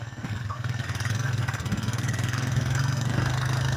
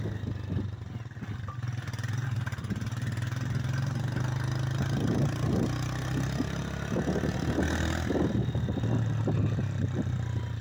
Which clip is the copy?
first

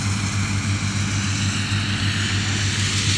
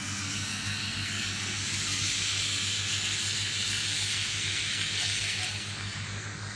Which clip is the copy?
second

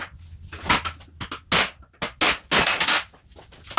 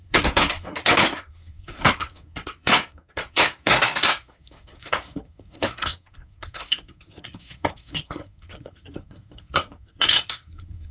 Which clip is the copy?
second